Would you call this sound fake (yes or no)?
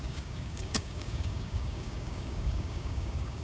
yes